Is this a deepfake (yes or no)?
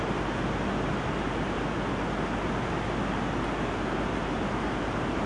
no